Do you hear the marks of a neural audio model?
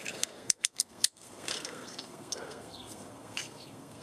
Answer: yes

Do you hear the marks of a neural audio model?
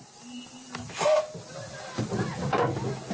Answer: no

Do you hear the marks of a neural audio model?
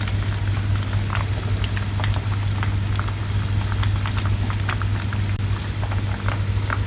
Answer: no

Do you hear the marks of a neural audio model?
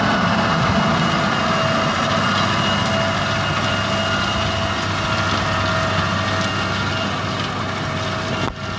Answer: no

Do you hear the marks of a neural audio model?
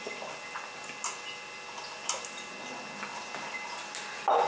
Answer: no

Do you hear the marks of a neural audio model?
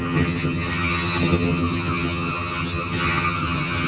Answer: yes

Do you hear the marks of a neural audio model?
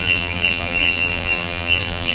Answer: yes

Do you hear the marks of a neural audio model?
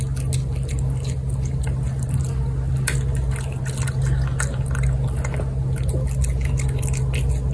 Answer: no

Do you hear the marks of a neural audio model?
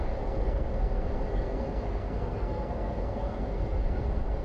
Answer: yes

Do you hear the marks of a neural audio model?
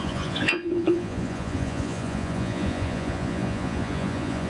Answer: yes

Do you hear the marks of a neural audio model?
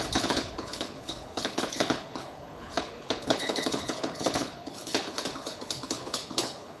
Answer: yes